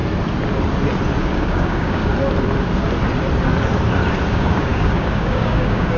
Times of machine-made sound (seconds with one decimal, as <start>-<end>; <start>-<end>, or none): 1.2-2.0; 4.3-6.0